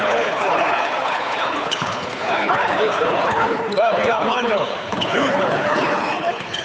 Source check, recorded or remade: remade